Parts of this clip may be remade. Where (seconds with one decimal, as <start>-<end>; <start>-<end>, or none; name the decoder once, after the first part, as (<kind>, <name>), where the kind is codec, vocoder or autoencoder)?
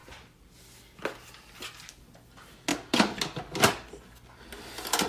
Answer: none